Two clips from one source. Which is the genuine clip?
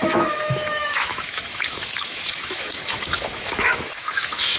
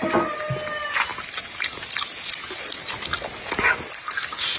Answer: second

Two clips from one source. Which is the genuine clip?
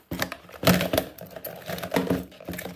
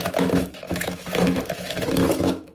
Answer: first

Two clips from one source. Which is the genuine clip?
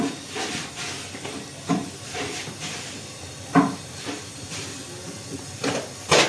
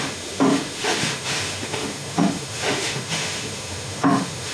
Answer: first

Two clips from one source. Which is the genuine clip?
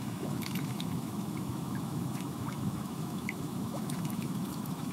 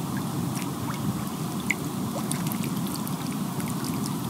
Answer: second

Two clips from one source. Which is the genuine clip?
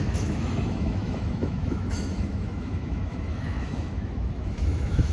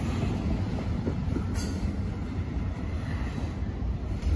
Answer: second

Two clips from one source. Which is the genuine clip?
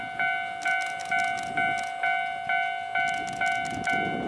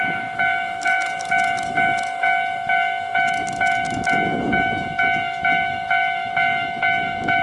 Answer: first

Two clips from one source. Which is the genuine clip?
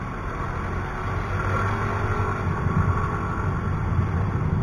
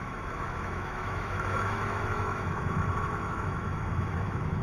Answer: first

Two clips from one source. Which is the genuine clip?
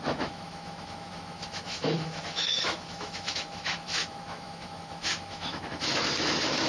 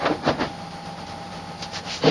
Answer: second